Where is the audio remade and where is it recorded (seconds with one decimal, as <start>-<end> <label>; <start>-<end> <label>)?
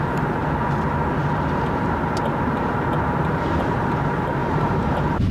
0.0-4.4 recorded; 4.4-5.3 remade